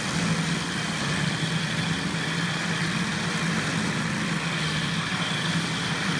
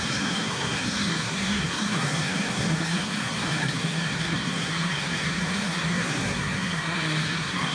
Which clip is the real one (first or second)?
first